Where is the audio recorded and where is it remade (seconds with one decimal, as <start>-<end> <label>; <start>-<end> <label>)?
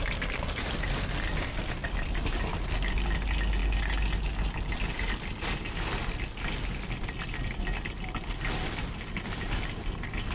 0.0-1.8 recorded; 1.8-2.5 remade; 2.5-10.3 recorded